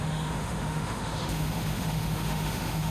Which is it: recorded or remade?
remade